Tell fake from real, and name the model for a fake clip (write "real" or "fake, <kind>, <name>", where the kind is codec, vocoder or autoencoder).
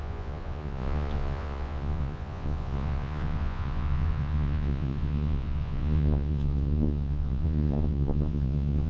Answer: fake, vocoder, Vocos